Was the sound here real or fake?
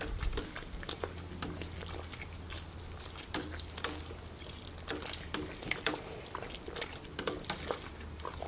real